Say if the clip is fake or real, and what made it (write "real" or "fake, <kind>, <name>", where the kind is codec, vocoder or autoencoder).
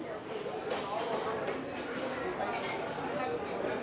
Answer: real